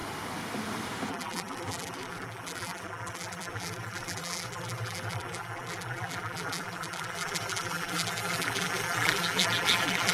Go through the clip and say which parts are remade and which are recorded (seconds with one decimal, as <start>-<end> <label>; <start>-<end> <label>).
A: 0.0-1.1 recorded; 1.1-10.1 remade